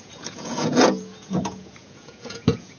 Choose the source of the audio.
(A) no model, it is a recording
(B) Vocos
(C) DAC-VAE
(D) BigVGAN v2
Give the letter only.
B